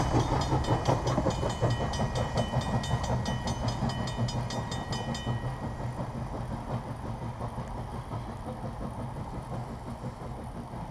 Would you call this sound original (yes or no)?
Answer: yes